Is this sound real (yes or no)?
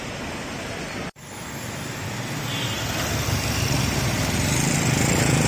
yes